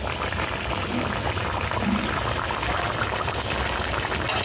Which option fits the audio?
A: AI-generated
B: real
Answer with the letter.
B